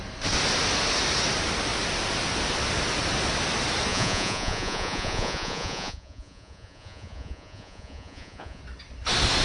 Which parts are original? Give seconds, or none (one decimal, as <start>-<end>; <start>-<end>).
0.0-3.9; 8.6-9.4